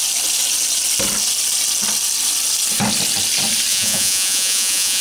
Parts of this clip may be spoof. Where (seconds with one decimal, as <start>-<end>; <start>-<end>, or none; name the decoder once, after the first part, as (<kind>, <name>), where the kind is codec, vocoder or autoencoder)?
3.7-5.0 (vocoder, Vocos)